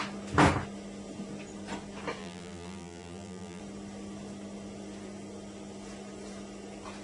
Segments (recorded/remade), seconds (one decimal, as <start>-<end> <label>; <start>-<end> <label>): 0.0-2.2 recorded; 2.2-3.6 remade; 3.6-7.0 recorded